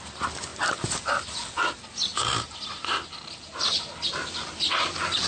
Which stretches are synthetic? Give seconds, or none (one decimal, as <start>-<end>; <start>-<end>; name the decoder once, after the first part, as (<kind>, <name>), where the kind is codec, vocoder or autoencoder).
none